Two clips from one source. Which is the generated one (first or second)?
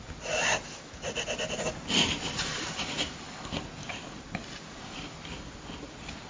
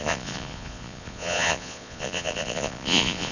second